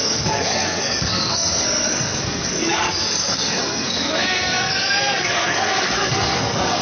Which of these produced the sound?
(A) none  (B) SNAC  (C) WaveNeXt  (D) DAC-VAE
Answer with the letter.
B